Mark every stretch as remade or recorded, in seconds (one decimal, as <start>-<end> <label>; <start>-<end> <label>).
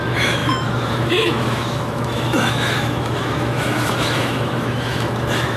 0.0-5.6 remade